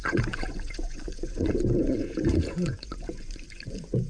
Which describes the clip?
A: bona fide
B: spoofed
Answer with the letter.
B